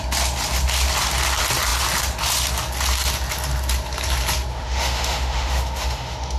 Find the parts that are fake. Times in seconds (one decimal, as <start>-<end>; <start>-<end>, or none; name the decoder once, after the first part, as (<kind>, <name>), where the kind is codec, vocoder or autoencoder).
4.5-6.4 (autoencoder, DAC-VAE)